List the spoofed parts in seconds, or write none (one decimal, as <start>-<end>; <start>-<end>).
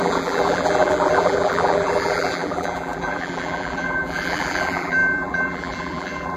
0.0-6.4